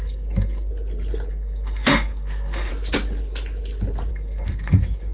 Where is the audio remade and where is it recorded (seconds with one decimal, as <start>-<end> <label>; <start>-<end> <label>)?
0.0-0.7 remade; 0.7-1.3 recorded; 1.3-2.7 remade; 2.7-4.1 recorded; 4.1-5.1 remade